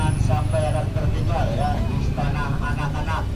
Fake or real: real